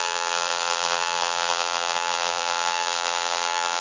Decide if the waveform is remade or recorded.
remade